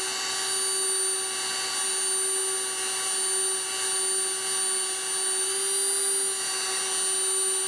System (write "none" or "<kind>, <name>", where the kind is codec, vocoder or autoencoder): none